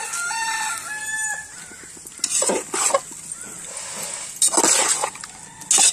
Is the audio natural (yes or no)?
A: yes